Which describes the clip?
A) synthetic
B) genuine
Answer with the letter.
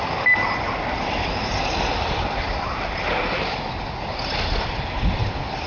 B